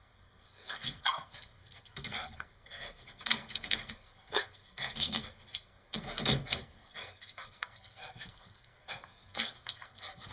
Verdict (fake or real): fake